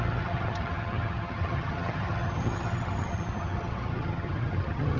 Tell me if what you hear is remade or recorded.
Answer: remade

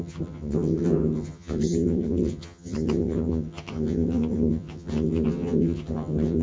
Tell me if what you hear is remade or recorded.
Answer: remade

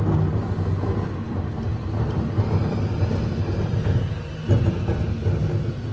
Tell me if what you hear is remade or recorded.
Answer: recorded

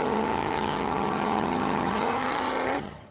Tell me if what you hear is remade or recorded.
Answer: remade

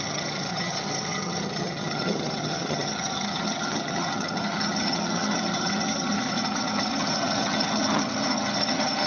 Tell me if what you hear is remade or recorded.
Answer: remade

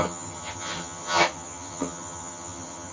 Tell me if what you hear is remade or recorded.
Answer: remade